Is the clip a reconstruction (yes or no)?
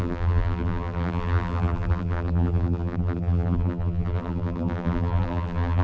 yes